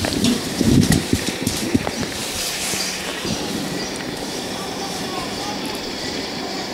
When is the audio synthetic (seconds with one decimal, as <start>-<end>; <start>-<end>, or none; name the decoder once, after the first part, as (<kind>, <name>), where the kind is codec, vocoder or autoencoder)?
0.0-3.1 (vocoder, BigVGAN v2); 3.8-6.7